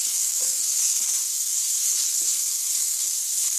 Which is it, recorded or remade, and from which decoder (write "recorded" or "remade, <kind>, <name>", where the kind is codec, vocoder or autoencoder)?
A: remade, codec, SNAC